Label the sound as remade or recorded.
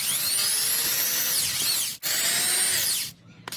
recorded